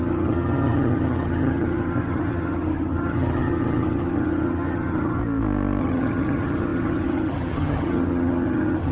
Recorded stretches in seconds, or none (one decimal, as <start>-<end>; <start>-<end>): 5.2-5.8